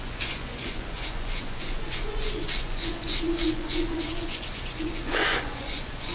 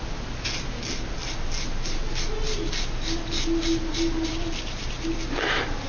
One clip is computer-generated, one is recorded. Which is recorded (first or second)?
second